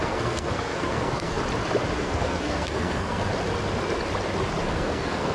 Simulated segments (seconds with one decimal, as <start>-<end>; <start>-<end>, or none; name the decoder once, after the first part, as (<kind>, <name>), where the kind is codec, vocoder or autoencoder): 0.0-1.4 (codec, SNAC); 1.9-3.3; 4.6-5.3

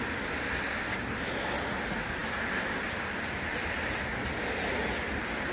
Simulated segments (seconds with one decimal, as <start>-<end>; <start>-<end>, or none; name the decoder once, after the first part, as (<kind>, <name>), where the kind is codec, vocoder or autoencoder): none

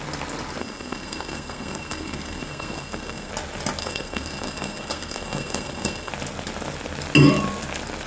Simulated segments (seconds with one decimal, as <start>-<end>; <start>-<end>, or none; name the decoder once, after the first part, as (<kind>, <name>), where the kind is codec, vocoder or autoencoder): 0.6-3.3 (codec, SNAC); 3.8-6.1